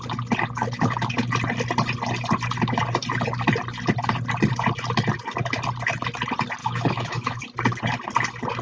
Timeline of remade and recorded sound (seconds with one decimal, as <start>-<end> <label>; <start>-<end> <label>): 0.0-6.6 recorded; 6.6-7.4 remade; 7.4-8.6 recorded